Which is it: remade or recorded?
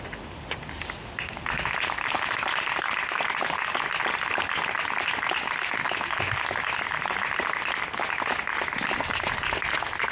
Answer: recorded